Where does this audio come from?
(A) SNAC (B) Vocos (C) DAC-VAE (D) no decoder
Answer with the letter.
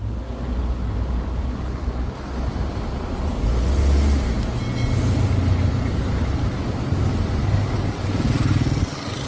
D